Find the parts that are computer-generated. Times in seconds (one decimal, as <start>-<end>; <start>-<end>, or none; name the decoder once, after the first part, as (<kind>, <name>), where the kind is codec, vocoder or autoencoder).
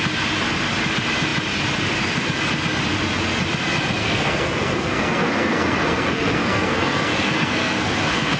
4.0-8.4 (codec, SNAC)